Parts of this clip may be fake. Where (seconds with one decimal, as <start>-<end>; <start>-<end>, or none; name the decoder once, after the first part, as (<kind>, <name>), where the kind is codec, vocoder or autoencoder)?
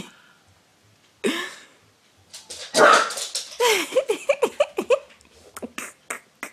none